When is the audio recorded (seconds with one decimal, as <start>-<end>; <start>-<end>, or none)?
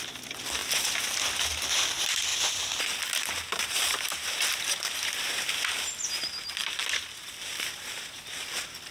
0.0-2.3; 4.7-6.6; 8.3-8.9